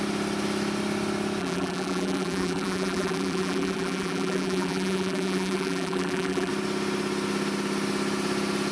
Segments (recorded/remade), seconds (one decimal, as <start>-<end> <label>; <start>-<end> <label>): 0.0-1.4 recorded; 1.4-6.5 remade; 6.5-8.7 recorded